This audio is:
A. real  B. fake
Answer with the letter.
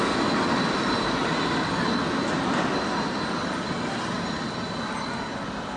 A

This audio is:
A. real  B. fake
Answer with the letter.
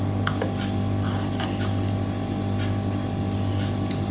A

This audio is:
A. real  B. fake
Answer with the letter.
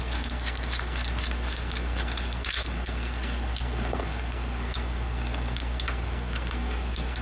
B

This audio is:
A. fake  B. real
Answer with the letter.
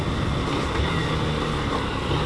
B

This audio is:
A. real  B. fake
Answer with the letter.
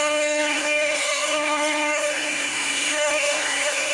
B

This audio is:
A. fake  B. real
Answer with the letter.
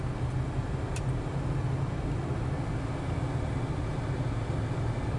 B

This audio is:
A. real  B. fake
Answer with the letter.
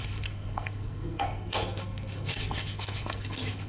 B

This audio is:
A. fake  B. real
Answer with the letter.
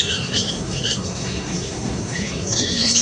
A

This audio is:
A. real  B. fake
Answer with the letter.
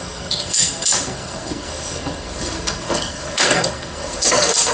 B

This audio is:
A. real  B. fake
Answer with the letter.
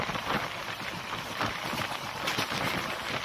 A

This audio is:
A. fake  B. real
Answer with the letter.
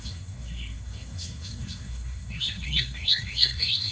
A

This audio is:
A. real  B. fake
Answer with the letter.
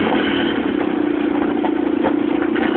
A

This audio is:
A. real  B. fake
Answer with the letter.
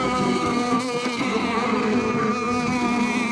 B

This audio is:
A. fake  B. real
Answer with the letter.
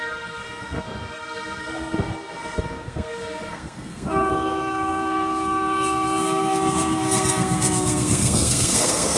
A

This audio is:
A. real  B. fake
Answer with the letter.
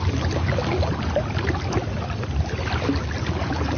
A